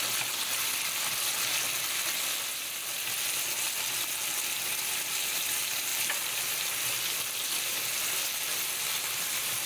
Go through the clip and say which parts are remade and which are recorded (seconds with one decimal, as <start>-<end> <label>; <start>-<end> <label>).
0.0-9.7 recorded